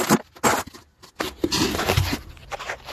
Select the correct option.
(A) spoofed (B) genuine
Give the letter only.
B